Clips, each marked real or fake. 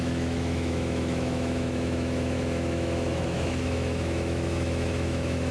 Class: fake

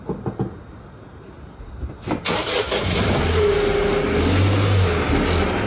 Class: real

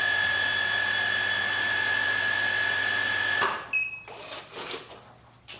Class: real